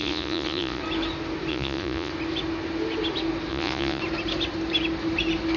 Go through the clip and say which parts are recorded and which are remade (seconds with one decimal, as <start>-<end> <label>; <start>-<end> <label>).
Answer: 0.0-0.8 remade; 0.8-1.5 recorded; 1.5-2.1 remade; 2.1-3.5 recorded; 3.5-4.0 remade; 4.0-5.6 recorded